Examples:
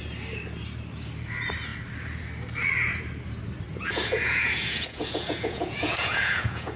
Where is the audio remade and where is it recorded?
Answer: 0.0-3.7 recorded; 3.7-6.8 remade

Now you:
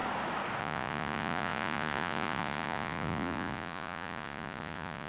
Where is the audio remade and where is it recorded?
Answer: 0.0-0.6 recorded; 0.6-5.1 remade